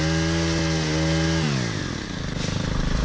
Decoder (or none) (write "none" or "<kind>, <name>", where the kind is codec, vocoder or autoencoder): none